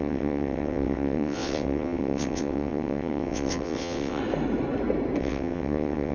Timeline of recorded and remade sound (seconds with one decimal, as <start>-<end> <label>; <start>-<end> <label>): 0.0-4.2 remade; 4.2-5.2 recorded; 5.2-6.1 remade